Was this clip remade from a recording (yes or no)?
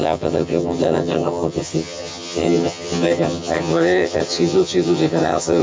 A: yes